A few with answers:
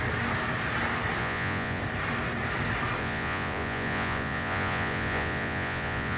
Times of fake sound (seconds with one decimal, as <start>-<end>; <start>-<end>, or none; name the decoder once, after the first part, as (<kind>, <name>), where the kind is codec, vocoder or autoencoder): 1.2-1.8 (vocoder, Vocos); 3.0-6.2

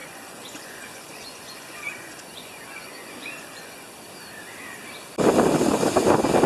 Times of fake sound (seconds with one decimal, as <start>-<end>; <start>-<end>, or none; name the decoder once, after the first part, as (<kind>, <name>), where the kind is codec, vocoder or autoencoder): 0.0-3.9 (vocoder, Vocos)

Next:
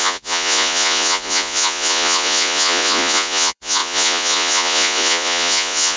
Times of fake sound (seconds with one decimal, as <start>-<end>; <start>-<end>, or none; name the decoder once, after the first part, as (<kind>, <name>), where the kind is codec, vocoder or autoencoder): 0.0-6.0 (vocoder, Vocos)

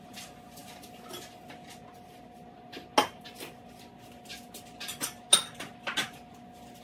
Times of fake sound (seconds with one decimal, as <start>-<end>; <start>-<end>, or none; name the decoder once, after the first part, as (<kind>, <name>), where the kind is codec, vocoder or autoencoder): none

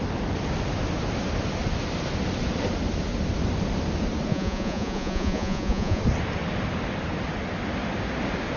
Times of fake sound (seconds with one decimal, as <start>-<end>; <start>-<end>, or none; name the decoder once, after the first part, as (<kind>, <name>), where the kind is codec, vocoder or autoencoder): 4.3-6.0 (vocoder, Vocos)

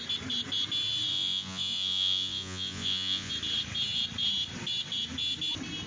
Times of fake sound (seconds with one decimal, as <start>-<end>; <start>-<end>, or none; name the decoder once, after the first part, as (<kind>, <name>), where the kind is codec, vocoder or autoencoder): 1.1-3.3 (vocoder, Vocos)

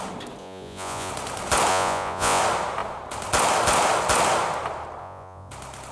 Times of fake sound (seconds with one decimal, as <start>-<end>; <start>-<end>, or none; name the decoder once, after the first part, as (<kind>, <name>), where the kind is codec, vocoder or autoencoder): 0.4-1.1 (vocoder, Vocos); 1.7-2.4; 5.0-5.5